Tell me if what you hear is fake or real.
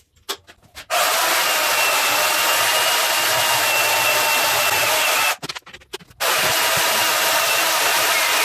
real